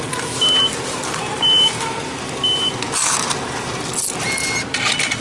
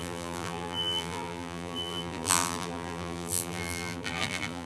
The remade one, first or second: second